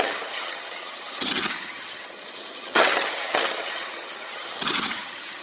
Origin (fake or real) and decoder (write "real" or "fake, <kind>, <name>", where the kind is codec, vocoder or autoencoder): fake, vocoder, HiFi-GAN